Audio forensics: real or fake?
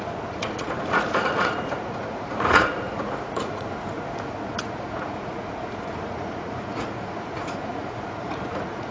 fake